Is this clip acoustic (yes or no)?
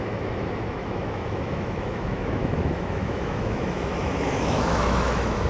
no